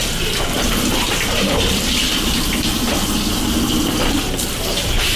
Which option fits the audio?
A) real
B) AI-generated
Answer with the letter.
B